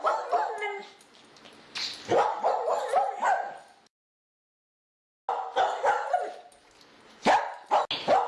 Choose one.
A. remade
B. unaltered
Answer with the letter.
B